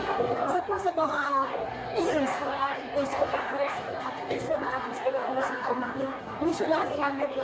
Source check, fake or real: fake